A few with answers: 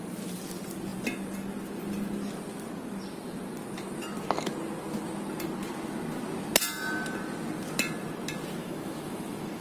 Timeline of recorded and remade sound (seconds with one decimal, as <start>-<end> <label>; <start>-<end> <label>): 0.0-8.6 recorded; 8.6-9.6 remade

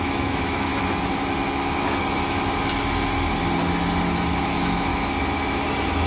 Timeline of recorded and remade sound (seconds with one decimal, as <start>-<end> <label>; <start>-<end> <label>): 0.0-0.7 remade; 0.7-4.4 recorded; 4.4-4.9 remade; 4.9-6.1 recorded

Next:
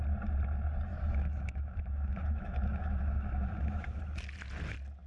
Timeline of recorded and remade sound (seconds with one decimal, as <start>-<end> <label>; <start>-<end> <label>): 0.0-0.9 recorded; 0.9-4.0 remade; 4.0-5.1 recorded

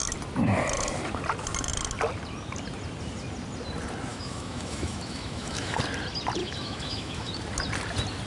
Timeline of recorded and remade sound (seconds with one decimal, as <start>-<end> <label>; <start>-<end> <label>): 0.0-4.1 recorded; 4.1-5.8 remade; 5.8-6.4 recorded; 6.4-7.3 remade; 7.3-8.3 recorded